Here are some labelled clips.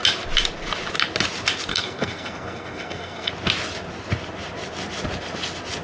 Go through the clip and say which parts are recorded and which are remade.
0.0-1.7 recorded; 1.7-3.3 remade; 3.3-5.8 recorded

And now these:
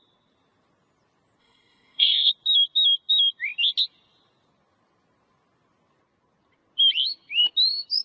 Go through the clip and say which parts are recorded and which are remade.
0.0-1.4 recorded; 1.4-2.3 remade; 2.3-8.0 recorded

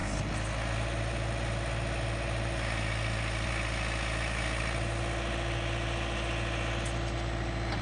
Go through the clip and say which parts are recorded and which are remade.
0.0-7.8 recorded

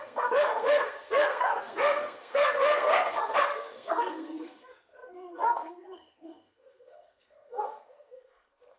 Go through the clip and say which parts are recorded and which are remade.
0.0-8.8 remade

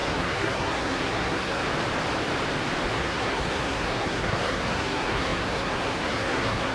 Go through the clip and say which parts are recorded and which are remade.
0.0-1.6 remade; 1.6-2.9 recorded; 2.9-6.7 remade

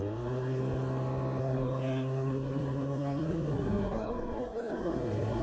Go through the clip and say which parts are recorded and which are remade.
0.0-0.6 remade; 0.6-1.4 recorded; 1.4-5.4 remade

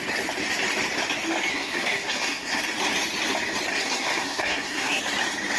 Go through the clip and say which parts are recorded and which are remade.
0.0-1.5 recorded; 1.5-2.6 remade; 2.6-3.7 recorded; 3.7-5.0 remade; 5.0-5.6 recorded

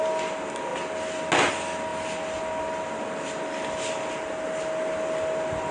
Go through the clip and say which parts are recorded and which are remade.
0.0-5.7 recorded